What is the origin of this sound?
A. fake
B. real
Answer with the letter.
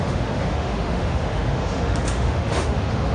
A